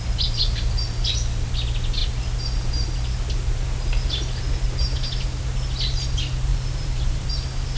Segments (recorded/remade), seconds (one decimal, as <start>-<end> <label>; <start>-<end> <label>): 0.0-6.5 recorded; 6.5-7.3 remade; 7.3-7.8 recorded